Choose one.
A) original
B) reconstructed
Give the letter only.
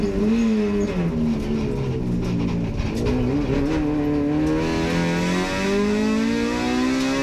A